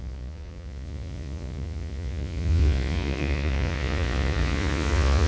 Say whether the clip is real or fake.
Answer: fake